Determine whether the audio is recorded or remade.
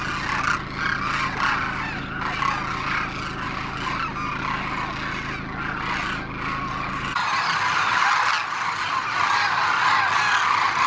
recorded